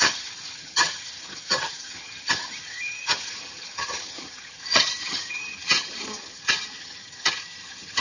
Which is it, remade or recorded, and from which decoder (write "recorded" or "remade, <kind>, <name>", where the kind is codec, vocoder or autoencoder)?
remade, vocoder, HiFi-GAN